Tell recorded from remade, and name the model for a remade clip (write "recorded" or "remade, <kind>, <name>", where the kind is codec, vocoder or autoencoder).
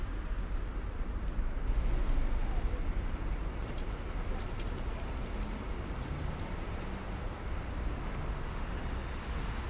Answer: recorded